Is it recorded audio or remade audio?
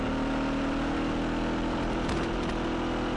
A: recorded